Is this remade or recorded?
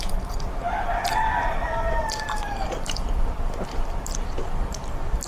remade